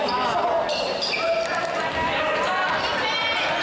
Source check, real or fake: real